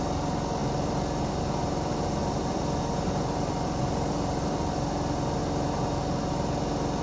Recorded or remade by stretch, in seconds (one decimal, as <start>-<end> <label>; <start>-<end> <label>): 0.0-5.4 remade; 5.4-6.3 recorded; 6.3-7.0 remade